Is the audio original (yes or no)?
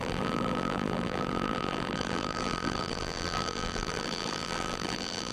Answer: no